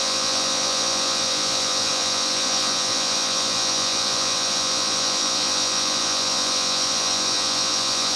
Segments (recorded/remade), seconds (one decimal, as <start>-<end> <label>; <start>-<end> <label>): 0.0-8.2 remade